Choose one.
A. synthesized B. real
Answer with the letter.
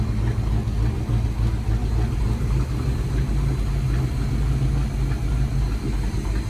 B